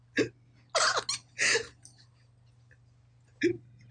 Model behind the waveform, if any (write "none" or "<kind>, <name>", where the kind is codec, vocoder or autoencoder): none